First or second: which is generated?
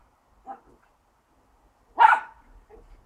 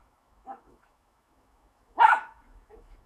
second